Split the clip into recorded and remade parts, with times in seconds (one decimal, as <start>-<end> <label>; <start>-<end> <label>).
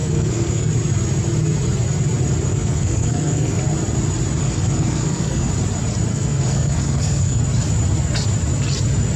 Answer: 0.0-0.7 remade; 0.7-2.5 recorded; 2.5-3.6 remade; 3.6-4.4 recorded; 4.4-5.5 remade; 5.5-6.1 recorded; 6.1-7.4 remade; 7.4-9.2 recorded